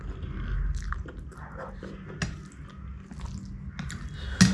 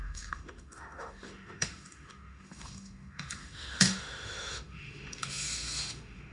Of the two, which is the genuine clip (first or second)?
first